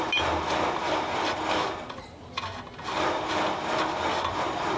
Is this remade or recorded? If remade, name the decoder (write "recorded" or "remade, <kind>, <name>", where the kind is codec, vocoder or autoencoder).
recorded